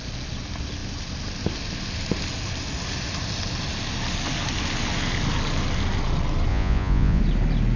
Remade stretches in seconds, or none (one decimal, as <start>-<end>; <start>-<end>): 6.5-7.2

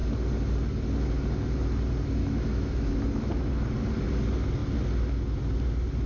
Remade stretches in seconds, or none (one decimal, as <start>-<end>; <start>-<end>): 2.2-3.5

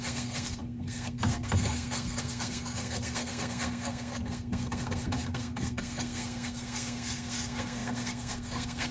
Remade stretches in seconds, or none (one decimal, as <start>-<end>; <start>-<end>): 0.0-8.9